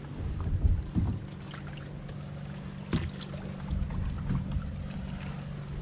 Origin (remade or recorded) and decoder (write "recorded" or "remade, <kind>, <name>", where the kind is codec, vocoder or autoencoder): recorded